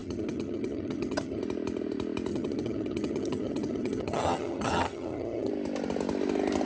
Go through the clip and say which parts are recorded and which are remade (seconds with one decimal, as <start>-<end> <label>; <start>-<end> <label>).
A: 0.0-1.4 remade; 1.4-2.3 recorded; 2.3-5.5 remade; 5.5-6.7 recorded